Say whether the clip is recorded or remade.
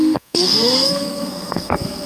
remade